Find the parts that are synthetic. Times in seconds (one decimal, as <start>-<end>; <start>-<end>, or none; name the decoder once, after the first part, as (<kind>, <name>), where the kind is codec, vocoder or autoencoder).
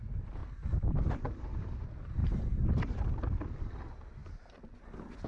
0.4-1.8 (vocoder, BigVGAN v2); 2.2-3.1